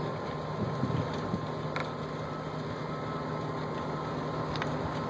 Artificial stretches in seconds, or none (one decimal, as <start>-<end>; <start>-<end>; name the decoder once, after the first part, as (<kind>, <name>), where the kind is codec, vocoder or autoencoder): none